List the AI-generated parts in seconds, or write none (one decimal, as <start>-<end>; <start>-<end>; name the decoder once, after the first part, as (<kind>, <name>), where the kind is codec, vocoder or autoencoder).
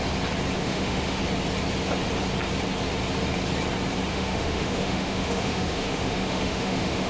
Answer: 0.6-1.2 (autoencoder, DAC-VAE); 4.1-7.1